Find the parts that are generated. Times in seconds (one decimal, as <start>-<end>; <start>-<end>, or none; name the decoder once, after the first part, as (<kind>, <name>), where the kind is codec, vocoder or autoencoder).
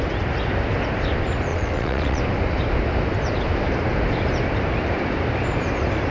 1.5-2.2 (vocoder, WaveNeXt)